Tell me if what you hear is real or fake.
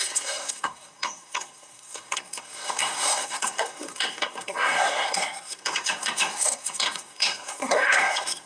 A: fake